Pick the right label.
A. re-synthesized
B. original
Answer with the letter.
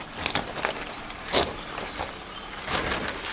B